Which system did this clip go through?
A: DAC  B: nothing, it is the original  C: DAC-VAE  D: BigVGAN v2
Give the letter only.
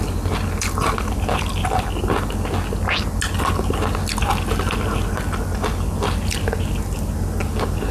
B